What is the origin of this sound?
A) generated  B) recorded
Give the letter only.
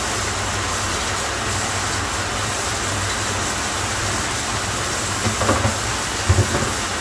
B